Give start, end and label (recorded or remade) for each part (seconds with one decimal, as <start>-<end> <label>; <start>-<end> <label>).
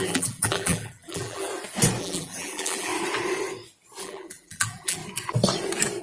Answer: 0.0-1.5 remade; 1.5-2.0 recorded; 2.0-2.9 remade; 2.9-4.0 recorded; 4.0-5.0 remade; 5.0-6.0 recorded